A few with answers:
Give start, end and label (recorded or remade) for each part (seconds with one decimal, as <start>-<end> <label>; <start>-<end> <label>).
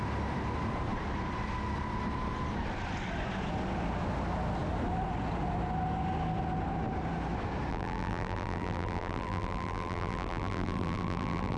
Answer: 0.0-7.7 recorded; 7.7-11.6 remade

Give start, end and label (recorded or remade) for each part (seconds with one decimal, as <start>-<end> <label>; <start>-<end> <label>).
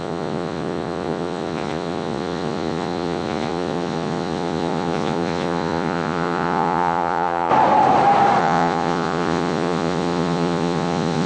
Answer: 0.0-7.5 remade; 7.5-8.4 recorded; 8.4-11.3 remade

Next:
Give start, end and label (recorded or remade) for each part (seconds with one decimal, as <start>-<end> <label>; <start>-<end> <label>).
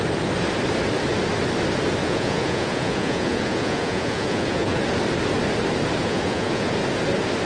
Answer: 0.0-2.0 recorded; 2.0-4.8 remade; 4.8-6.0 recorded; 6.0-6.7 remade; 6.7-7.5 recorded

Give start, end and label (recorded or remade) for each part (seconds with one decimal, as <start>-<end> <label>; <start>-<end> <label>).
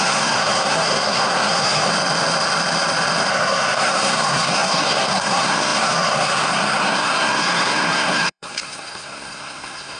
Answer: 0.0-1.9 remade; 1.9-3.3 recorded; 3.3-10.0 remade